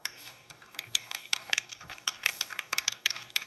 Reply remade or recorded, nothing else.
remade